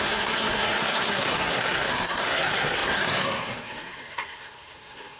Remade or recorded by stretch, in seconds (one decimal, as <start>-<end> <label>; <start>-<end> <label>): 0.0-5.2 remade